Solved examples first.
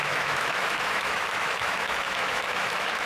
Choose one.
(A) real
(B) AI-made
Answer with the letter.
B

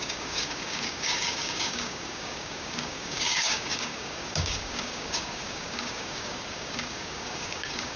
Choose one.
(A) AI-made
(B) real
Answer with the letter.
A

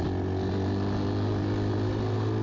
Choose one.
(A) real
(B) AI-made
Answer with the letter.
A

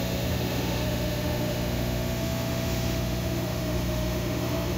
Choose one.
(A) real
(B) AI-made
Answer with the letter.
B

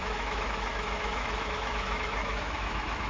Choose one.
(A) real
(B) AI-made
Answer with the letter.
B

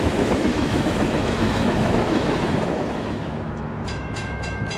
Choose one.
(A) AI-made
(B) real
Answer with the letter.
A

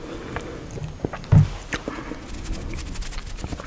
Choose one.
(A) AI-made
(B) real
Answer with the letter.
B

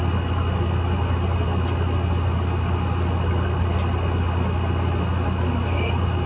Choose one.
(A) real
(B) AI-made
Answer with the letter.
A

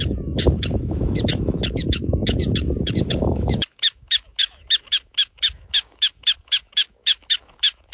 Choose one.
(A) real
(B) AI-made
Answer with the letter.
B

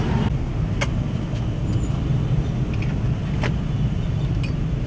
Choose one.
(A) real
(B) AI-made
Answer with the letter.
A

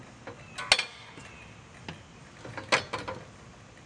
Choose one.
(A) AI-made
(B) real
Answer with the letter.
B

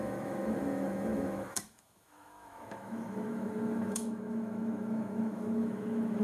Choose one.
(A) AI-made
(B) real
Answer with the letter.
A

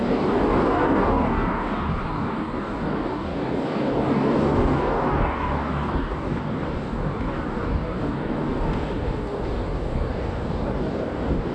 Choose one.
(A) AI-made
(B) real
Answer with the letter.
A